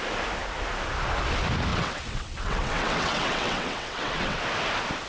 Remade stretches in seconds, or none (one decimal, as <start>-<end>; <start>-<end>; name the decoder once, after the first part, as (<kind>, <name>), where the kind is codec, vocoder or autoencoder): 1.7-4.4 (vocoder, WaveNeXt)